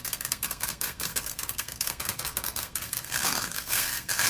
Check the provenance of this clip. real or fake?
fake